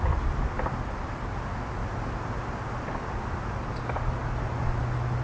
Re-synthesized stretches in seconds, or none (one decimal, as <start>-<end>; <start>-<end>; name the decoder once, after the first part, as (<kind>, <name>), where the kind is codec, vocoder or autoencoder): none